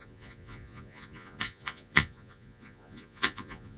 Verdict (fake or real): fake